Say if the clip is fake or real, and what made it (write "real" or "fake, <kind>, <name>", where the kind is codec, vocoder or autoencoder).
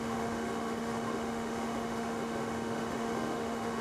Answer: fake, autoencoder, DAC-VAE